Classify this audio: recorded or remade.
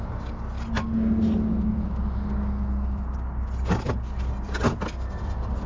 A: recorded